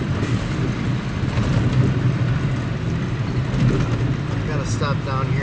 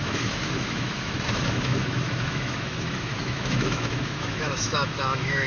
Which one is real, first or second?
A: first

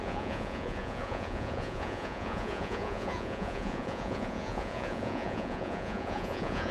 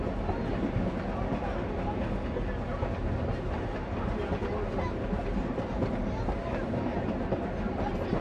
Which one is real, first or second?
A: second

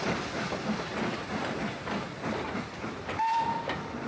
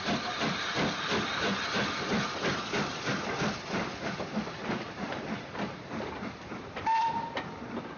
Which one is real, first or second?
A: first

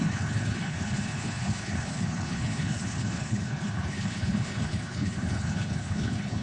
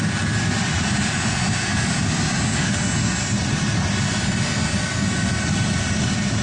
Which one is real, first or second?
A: second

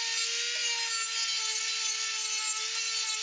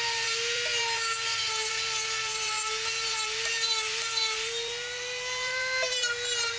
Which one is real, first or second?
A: first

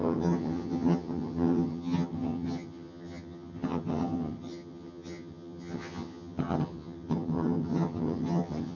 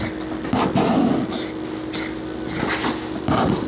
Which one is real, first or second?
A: second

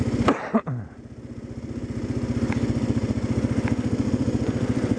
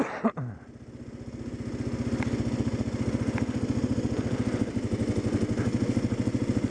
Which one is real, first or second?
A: second